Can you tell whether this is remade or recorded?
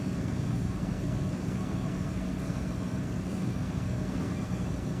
remade